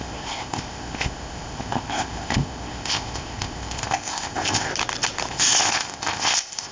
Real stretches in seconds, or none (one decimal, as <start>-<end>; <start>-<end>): 4.7-5.3